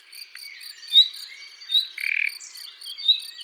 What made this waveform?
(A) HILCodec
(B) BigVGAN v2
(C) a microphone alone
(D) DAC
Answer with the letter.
C